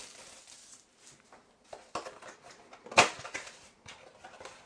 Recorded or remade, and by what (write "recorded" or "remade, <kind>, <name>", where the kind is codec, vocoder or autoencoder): recorded